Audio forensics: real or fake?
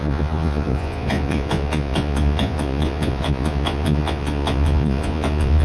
fake